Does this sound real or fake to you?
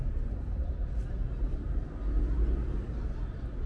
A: real